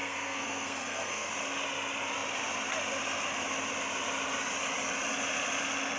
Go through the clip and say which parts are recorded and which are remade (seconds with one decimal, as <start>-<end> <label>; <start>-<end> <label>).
0.0-1.3 remade; 1.3-6.0 recorded